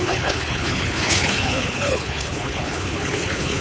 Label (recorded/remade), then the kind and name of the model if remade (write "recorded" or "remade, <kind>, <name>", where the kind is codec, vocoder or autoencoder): remade, codec, HILCodec